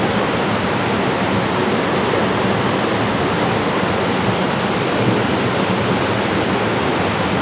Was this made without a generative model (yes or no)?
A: yes